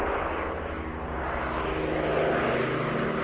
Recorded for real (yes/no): yes